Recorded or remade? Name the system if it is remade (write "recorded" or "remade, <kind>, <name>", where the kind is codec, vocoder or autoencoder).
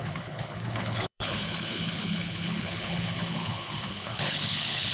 remade, codec, HILCodec